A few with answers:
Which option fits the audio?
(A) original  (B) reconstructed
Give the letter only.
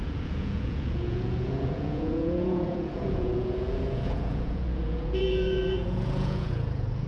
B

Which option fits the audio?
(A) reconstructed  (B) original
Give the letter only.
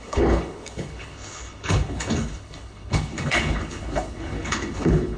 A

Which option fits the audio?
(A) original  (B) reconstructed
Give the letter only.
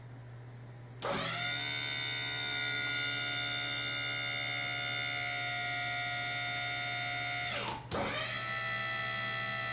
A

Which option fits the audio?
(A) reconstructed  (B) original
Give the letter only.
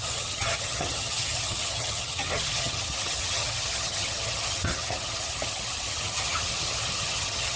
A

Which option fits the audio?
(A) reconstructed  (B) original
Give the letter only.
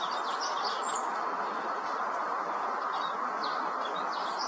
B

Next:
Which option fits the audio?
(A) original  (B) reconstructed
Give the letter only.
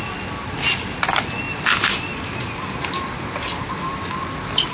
A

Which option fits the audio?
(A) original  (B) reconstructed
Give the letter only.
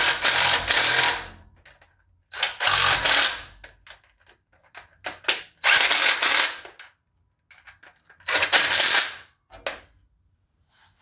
A